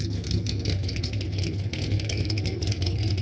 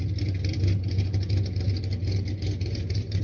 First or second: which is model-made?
first